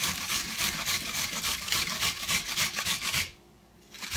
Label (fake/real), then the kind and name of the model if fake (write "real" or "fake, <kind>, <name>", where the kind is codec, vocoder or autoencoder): fake, codec, DAC